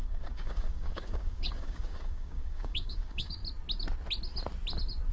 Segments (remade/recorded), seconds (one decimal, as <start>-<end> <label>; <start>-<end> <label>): 0.0-3.4 remade; 3.4-5.1 recorded